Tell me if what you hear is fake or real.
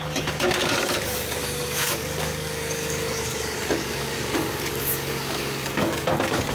fake